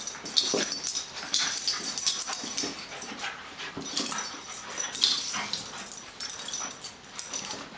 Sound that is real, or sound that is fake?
real